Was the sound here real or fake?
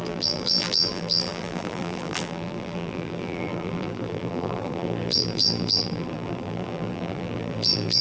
fake